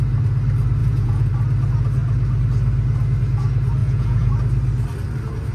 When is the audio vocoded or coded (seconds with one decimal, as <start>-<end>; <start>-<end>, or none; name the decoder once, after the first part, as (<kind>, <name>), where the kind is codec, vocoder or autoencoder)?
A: 0.8-1.3 (vocoder, Vocos); 3.8-4.3